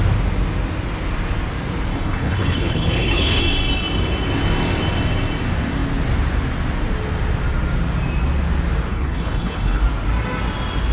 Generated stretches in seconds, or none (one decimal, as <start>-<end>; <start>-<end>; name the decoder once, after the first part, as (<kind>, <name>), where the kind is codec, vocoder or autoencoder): 1.9-3.4 (codec, HILCodec); 8.9-9.8

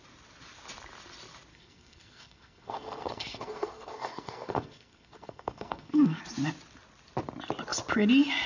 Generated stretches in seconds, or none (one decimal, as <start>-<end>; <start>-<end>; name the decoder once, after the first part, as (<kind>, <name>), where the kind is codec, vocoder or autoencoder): 1.5-6.2 (codec, SNAC)

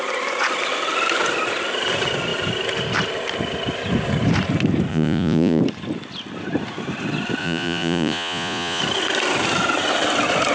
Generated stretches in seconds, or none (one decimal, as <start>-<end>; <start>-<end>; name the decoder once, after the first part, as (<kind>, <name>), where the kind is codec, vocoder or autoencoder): 4.9-5.6 (vocoder, Vocos); 7.4-8.8

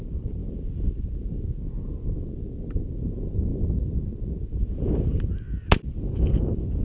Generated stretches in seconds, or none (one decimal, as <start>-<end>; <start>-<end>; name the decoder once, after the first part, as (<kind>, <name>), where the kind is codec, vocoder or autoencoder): none